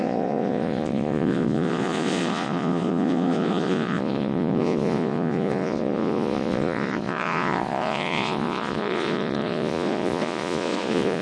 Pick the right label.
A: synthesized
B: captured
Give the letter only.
A